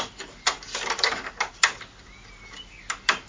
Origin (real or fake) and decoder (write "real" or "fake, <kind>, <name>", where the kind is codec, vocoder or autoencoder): real